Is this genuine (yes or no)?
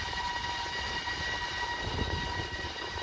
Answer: no